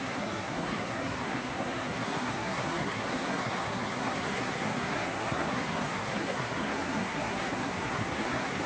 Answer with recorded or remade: remade